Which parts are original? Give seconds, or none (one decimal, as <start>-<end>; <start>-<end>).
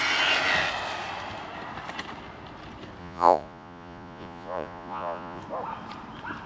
0.0-3.0; 5.4-6.5